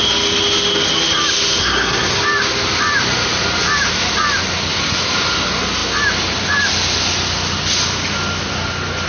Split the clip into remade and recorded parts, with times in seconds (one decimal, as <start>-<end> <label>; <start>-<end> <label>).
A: 0.0-1.6 recorded; 1.6-2.2 remade; 2.2-9.1 recorded